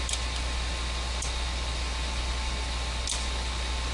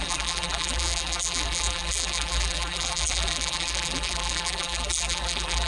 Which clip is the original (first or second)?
first